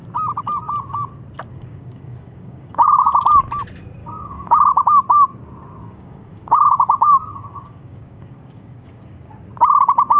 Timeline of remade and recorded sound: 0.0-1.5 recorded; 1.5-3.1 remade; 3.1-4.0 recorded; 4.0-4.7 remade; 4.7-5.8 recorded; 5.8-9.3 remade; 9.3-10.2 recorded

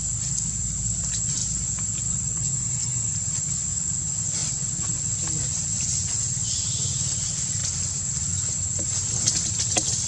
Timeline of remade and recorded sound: 0.0-4.4 recorded; 4.4-5.0 remade; 5.0-10.1 recorded

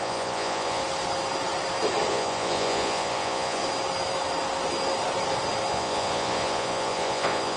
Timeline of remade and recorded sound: 0.0-0.8 remade; 0.8-2.1 recorded; 2.1-3.6 remade; 3.6-5.7 recorded; 5.7-7.6 remade

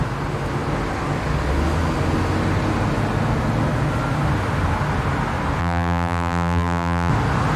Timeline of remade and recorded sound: 0.0-5.6 recorded; 5.6-7.1 remade; 7.1-7.6 recorded

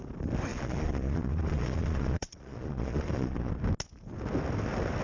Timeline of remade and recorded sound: 0.0-0.5 recorded; 0.5-3.5 remade; 3.5-5.0 recorded